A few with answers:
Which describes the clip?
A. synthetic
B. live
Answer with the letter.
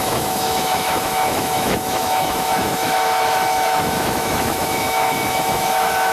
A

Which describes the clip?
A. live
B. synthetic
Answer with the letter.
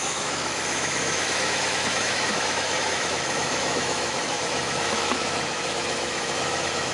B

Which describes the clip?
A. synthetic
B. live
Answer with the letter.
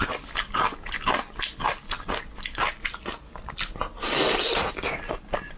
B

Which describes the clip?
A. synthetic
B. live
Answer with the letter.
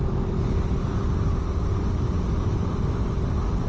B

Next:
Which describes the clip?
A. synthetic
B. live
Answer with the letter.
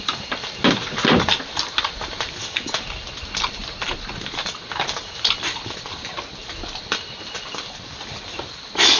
B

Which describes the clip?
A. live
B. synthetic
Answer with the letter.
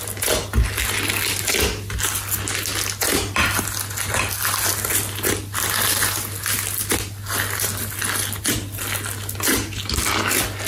A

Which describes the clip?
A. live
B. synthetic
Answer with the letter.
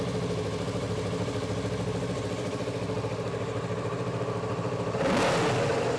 A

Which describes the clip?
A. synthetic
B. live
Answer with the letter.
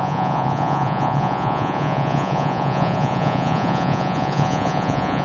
A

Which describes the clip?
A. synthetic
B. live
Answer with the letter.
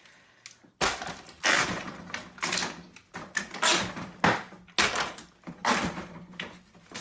B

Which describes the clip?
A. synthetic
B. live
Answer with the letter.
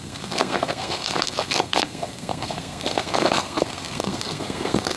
A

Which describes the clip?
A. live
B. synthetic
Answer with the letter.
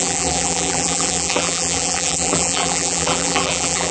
B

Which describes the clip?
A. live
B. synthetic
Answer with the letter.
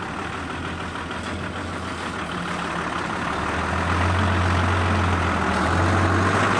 A